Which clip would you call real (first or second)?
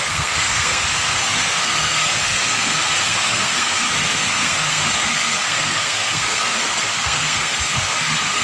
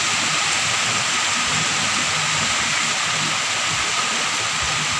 second